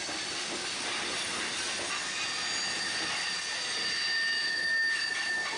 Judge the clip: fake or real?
real